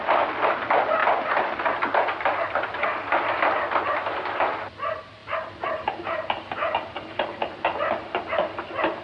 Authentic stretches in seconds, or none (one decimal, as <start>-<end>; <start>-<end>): 0.0-9.0